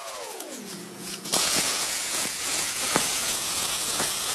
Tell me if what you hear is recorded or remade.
remade